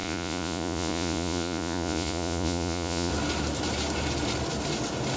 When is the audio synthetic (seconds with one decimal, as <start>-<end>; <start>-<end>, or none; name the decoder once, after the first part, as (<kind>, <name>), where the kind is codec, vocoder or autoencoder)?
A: 0.0-3.1 (vocoder, Vocos)